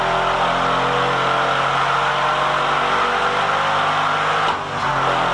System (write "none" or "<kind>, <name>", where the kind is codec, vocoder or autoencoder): none